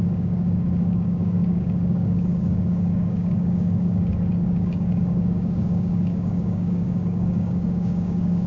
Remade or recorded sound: remade